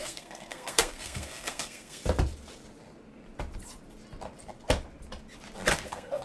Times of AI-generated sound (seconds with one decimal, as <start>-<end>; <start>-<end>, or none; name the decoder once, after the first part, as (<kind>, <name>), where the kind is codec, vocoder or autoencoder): 0.0-2.0 (codec, SNAC); 5.7-6.2